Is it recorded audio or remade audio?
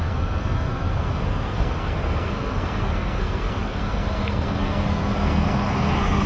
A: remade